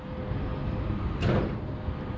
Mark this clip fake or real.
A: real